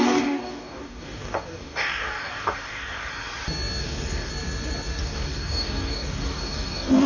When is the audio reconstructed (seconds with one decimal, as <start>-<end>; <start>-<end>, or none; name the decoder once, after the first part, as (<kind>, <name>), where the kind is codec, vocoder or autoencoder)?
0.0-3.1 (codec, DAC); 3.8-4.3; 5.0-7.1

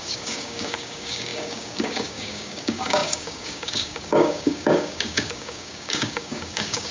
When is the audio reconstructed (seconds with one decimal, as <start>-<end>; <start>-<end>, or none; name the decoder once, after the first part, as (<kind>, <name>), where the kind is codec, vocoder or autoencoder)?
0.0-6.9 (codec, DAC)

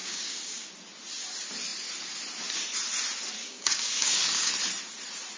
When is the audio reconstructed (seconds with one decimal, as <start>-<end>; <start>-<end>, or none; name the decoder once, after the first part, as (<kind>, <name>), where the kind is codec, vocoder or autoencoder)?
0.0-0.7 (codec, DAC); 3.4-4.5

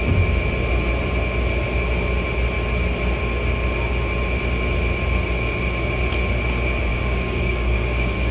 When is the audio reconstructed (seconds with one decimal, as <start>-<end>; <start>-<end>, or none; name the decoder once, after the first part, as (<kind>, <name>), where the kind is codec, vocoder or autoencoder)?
6.9-8.3 (codec, DAC)

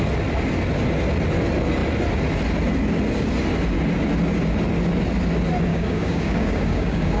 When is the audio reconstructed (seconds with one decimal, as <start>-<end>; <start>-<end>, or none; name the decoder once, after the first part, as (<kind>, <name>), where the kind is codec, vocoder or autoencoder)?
5.7-7.2 (codec, DAC)

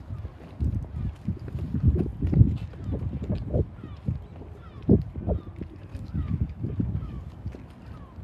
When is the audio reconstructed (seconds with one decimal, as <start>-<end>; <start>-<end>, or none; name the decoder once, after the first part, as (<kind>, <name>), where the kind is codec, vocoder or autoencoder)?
5.9-7.7 (codec, DAC)

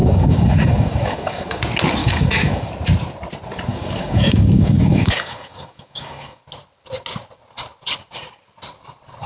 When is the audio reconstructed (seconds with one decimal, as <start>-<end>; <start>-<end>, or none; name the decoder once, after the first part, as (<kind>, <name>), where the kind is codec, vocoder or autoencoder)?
0.0-1.6 (codec, DAC); 2.0-2.7; 3.7-6.4

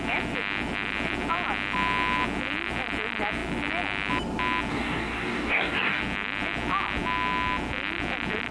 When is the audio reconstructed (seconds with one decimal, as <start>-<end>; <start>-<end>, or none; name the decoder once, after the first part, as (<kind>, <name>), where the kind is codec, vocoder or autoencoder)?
4.7-6.0 (codec, DAC)